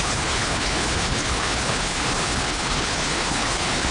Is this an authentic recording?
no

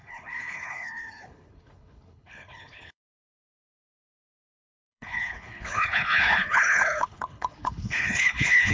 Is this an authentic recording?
no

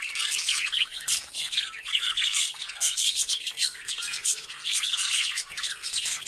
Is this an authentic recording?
no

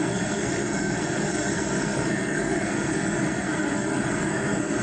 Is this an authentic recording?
no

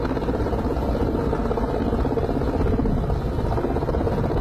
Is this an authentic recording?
yes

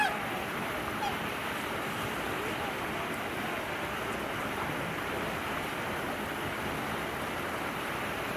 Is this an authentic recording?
no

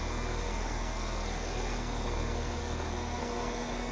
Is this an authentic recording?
no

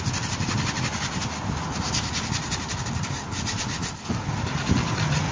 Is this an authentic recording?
yes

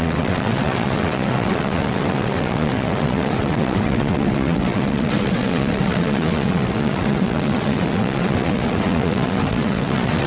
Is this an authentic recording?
no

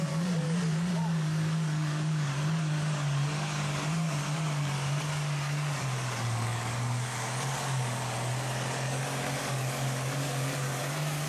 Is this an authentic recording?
no